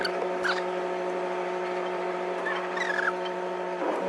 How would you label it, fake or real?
real